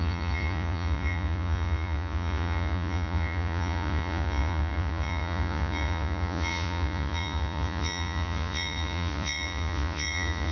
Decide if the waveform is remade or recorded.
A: remade